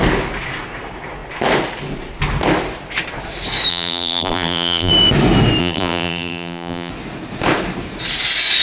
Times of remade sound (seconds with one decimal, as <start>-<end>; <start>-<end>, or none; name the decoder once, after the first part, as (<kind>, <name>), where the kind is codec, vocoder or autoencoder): 3.7-4.9 (vocoder, BigVGAN v2); 5.6-6.9

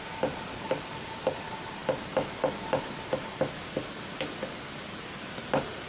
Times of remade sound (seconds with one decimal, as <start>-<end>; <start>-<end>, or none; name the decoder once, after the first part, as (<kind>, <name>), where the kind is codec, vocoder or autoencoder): none

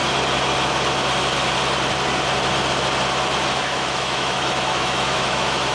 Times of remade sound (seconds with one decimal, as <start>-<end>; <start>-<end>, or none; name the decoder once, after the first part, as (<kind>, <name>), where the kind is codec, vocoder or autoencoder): 3.4-5.7 (autoencoder, DAC-VAE)